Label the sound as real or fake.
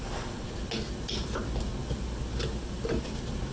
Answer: real